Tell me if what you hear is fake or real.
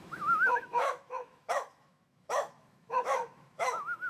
fake